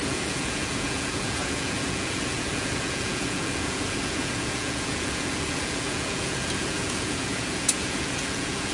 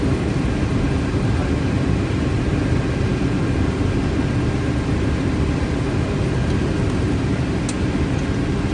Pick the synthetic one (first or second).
first